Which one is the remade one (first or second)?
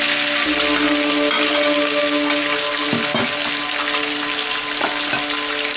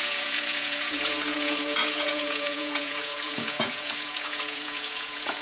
second